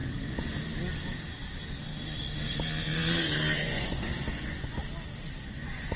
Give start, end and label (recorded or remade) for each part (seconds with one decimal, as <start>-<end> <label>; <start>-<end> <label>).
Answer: 0.0-3.6 recorded; 3.6-4.8 remade; 4.8-5.5 recorded; 5.5-6.0 remade